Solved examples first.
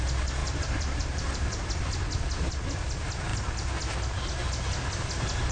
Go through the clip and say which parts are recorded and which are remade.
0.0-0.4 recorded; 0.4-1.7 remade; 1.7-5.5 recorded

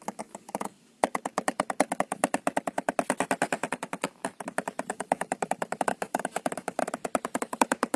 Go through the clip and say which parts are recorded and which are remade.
0.0-2.2 remade; 2.2-3.7 recorded; 3.7-4.2 remade; 4.2-4.9 recorded; 4.9-6.8 remade; 6.8-7.4 recorded; 7.4-8.0 remade

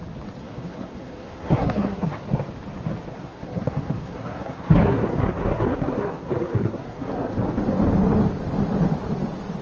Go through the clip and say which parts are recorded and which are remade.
0.0-0.4 recorded; 0.4-2.2 remade; 2.2-3.1 recorded; 3.1-7.3 remade; 7.3-9.6 recorded

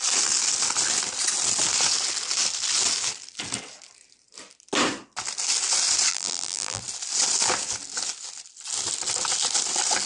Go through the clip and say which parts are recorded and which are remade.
0.0-6.1 recorded; 6.1-6.8 remade; 6.8-10.1 recorded